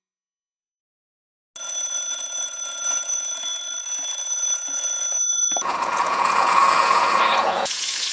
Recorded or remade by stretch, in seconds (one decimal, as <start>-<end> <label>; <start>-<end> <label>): 0.0-0.8 remade; 0.8-1.6 recorded; 1.6-3.5 remade; 3.5-4.1 recorded; 4.1-8.1 remade